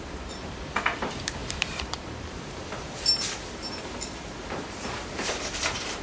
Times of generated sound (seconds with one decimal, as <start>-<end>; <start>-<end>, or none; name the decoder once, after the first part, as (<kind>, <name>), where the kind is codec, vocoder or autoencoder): 0.0-6.0 (vocoder, BigVGAN v2)